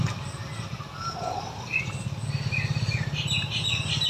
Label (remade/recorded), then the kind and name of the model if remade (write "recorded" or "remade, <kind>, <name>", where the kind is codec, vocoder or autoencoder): recorded